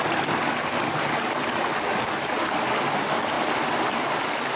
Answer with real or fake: real